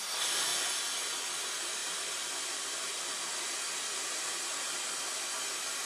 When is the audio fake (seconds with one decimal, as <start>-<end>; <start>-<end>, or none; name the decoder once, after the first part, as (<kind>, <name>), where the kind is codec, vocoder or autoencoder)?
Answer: 0.0-0.5 (vocoder, BigVGAN v2); 1.3-5.9